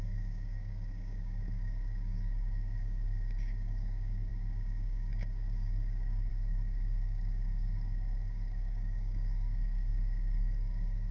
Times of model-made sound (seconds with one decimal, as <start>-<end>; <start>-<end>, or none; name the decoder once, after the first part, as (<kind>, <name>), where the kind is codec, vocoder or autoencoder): 0.0-11.1 (codec, DAC)